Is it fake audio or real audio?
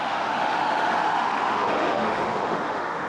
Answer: fake